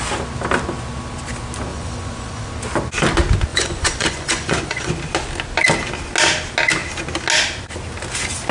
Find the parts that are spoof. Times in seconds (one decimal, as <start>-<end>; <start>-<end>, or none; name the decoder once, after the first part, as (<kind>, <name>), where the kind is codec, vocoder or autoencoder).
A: 1.7-2.5 (vocoder, Vocos); 3.5-4.9